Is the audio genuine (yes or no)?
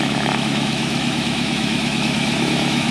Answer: no